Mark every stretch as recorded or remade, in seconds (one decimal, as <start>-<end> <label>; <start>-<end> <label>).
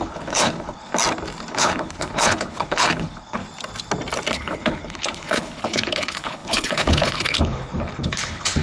0.0-0.9 remade; 0.9-1.5 recorded; 1.5-3.4 remade; 3.4-4.3 recorded; 4.3-8.6 remade